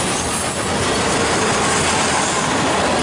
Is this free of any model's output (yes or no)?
yes